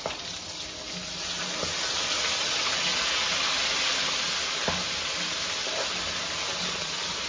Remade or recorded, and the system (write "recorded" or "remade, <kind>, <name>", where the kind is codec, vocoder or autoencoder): recorded